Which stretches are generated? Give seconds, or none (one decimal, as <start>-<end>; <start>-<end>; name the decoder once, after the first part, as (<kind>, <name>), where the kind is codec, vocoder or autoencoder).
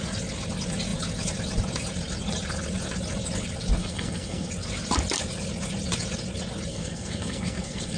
3.8-4.5 (codec, SNAC); 6.7-8.0